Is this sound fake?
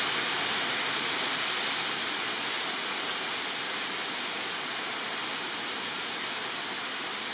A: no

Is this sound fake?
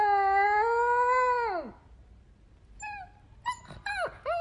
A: no